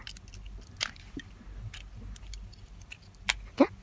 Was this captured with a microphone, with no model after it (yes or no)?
yes